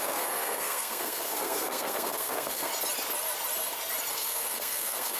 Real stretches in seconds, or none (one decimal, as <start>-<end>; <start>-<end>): 2.7-4.1